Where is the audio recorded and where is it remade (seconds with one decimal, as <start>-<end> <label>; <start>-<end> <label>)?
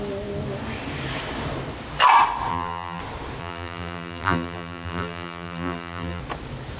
0.0-2.5 recorded; 2.5-3.0 remade; 3.0-3.4 recorded; 3.4-6.2 remade; 6.2-6.8 recorded